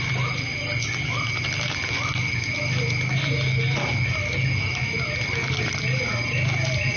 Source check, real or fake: real